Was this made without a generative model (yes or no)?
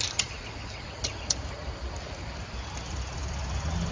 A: no